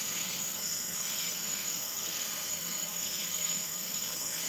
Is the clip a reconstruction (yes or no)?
yes